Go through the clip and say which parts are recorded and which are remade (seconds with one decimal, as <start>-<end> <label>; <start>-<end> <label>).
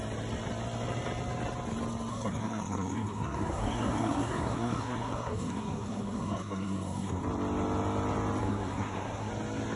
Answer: 0.0-2.1 recorded; 2.1-7.2 remade; 7.2-8.4 recorded; 8.4-9.3 remade; 9.3-9.8 recorded